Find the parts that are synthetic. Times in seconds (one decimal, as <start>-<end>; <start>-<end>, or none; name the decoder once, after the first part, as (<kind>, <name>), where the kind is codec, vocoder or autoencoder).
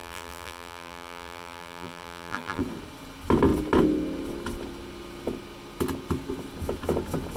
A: 0.0-2.6 (vocoder, BigVGAN v2)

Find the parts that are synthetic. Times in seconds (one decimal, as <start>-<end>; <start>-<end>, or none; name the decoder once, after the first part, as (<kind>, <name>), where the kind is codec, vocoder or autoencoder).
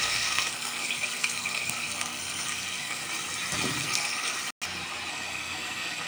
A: 0.0-3.0 (codec, SNAC); 3.8-4.3; 5.1-6.1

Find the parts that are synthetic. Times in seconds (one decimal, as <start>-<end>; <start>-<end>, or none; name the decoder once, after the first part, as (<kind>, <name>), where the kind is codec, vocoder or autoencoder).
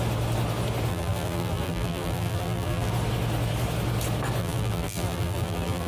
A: 0.9-2.9 (vocoder, BigVGAN v2); 4.4-5.9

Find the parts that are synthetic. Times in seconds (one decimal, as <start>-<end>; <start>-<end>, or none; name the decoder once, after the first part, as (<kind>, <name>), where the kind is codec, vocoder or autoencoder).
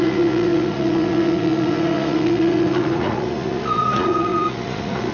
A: 0.0-5.1 (vocoder, Vocos)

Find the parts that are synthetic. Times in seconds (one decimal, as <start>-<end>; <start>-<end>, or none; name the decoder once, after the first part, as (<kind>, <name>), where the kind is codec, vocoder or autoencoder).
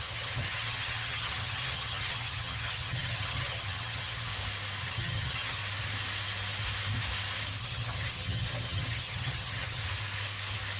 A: 0.0-4.3 (vocoder, HiFi-GAN); 4.8-5.6; 7.6-9.8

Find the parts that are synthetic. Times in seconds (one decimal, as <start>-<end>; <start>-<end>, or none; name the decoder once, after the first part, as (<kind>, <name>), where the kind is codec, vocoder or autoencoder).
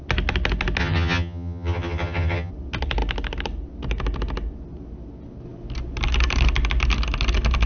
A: 0.8-2.5 (vocoder, HiFi-GAN)